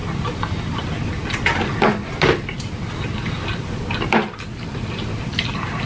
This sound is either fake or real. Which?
real